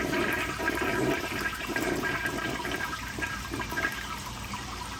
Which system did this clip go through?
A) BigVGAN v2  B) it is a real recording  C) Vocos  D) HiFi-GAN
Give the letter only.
A